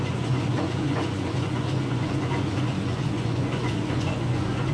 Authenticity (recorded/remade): remade